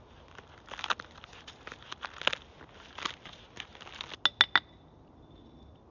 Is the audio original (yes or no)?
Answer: yes